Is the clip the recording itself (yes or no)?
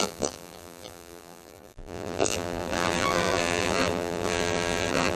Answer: no